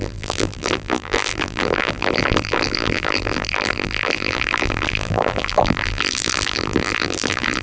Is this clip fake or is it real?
fake